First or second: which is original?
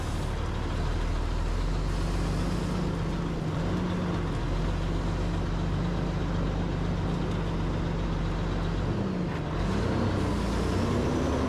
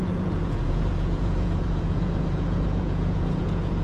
first